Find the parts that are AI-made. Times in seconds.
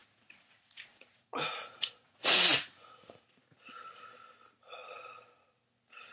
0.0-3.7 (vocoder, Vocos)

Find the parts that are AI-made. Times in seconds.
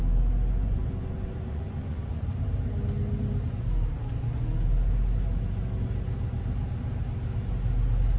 0.6-2.2 (vocoder, Vocos)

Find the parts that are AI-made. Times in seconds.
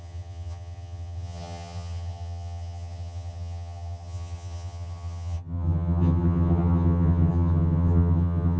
0.0-8.6 (vocoder, HiFi-GAN)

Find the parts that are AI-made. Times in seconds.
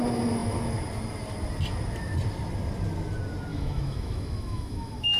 3.5-5.2 (autoencoder, DAC-VAE)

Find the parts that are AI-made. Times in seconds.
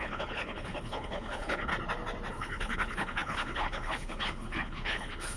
0.0-1.7 (codec, HILCodec); 2.3-5.4